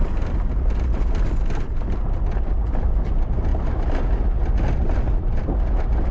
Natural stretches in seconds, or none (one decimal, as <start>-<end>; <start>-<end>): 0.0-2.5; 3.5-5.4